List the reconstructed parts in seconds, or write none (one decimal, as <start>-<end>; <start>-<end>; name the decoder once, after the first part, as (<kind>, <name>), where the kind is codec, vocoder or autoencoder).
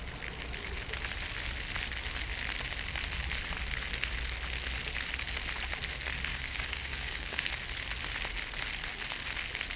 6.3-7.5 (codec, DAC)